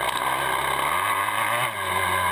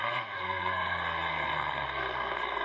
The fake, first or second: second